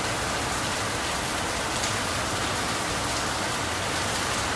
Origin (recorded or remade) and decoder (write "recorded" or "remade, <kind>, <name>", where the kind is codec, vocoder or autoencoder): recorded